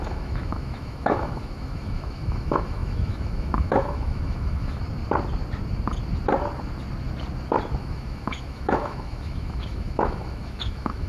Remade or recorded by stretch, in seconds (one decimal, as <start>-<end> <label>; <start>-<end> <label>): 0.0-4.8 remade; 4.8-7.8 recorded; 7.8-11.1 remade